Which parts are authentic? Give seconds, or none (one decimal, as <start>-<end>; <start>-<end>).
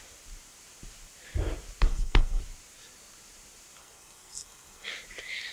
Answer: 0.0-1.9; 2.4-3.8; 4.9-5.5